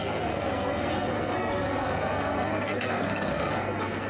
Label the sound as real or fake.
fake